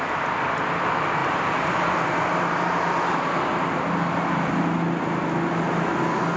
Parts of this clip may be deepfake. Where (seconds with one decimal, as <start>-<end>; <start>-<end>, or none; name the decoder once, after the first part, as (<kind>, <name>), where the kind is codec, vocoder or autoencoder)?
none